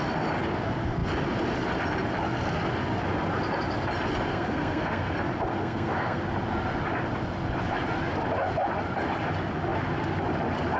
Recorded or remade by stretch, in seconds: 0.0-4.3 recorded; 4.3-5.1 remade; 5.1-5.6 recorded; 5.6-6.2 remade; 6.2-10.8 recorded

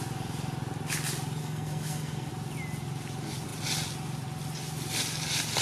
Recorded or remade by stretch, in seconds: 0.0-1.4 recorded; 1.4-2.3 remade; 2.3-5.6 recorded

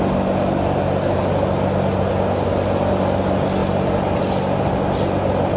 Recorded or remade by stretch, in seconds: 0.0-5.6 recorded

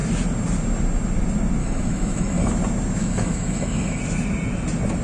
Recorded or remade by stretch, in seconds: 0.0-1.6 recorded; 1.6-2.5 remade; 2.5-3.0 recorded; 3.0-4.0 remade; 4.0-5.0 recorded

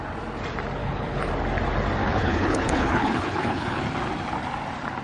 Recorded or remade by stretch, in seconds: 0.0-0.8 recorded; 0.8-1.3 remade; 1.3-2.0 recorded; 2.0-3.8 remade; 3.8-5.0 recorded